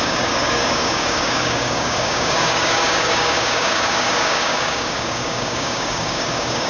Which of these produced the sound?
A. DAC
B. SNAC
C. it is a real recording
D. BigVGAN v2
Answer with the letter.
A